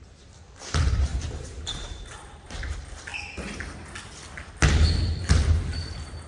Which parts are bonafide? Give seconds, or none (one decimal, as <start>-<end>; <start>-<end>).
3.1-5.3

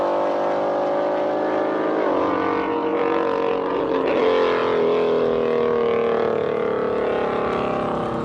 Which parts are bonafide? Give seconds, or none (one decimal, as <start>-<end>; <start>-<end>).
0.0-2.9; 3.5-8.2

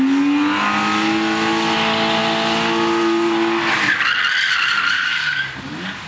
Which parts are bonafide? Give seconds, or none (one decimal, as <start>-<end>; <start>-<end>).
0.0-6.1